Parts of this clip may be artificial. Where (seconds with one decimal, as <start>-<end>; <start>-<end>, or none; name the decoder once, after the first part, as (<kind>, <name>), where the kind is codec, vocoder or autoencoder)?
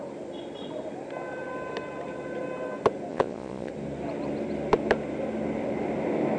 3.1-3.7 (vocoder, Vocos)